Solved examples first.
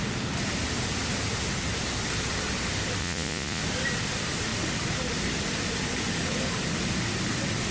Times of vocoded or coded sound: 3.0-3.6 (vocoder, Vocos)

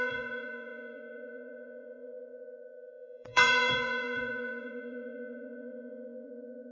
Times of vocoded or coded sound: 0.0-6.7 (vocoder, Vocos)